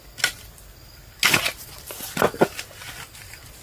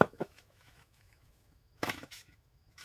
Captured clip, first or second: first